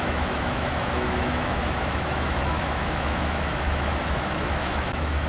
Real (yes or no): no